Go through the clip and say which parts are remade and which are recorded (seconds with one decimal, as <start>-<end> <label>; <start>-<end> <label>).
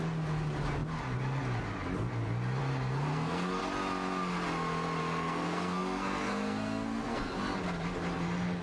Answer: 0.0-3.1 recorded; 3.1-3.6 remade; 3.6-5.0 recorded; 5.0-7.3 remade; 7.3-8.6 recorded